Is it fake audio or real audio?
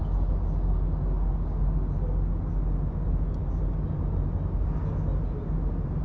real